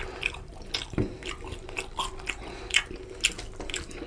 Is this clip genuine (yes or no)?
yes